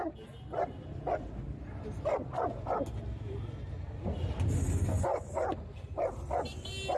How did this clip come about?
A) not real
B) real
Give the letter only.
B